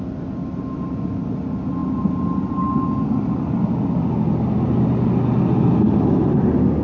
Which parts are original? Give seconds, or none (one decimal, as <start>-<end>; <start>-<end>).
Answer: 0.0-6.8